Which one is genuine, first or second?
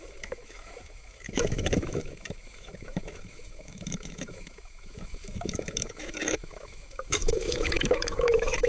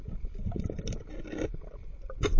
second